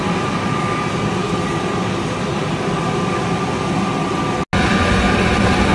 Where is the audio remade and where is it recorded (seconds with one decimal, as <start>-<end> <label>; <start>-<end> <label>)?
0.0-5.7 recorded

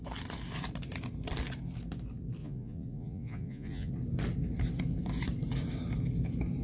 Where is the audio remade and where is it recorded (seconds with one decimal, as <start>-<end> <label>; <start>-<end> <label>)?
0.0-2.4 recorded; 2.4-3.9 remade; 3.9-6.6 recorded

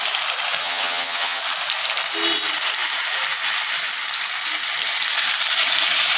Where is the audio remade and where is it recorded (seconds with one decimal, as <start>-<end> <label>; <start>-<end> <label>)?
0.0-0.6 recorded; 0.6-1.4 remade; 1.4-6.2 recorded

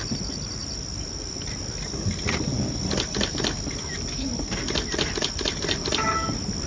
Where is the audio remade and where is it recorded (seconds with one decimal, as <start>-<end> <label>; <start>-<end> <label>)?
0.0-6.7 recorded

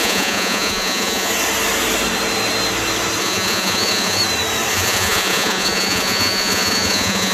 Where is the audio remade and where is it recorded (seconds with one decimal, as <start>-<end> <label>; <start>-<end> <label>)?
0.0-1.3 remade; 1.3-3.2 recorded; 3.2-4.2 remade; 4.2-4.7 recorded; 4.7-7.3 remade

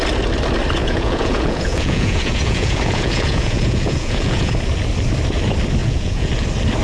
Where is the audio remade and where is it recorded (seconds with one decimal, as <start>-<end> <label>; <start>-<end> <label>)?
0.0-0.8 recorded; 0.8-4.5 remade; 4.5-5.8 recorded; 5.8-6.3 remade; 6.3-6.8 recorded

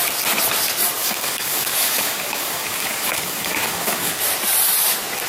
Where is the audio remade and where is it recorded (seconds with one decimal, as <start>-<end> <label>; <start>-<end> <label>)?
0.0-1.0 recorded; 1.0-4.2 remade; 4.2-5.3 recorded